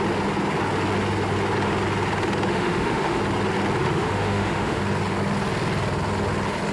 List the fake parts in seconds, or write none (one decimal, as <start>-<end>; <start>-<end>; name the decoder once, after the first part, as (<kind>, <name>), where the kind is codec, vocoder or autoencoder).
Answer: 2.5-3.2 (autoencoder, DAC-VAE); 3.8-4.8